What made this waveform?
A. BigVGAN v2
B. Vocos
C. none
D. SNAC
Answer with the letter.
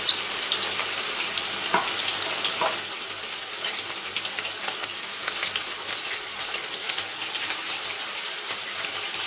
C